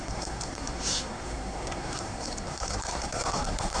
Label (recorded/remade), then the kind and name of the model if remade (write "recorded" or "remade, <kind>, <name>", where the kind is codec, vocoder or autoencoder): remade, codec, SNAC